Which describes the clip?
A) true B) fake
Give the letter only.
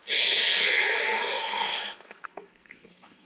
B